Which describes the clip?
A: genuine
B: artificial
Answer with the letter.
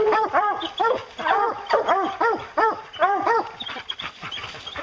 B